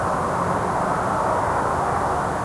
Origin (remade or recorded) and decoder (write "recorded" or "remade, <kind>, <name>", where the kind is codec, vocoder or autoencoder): recorded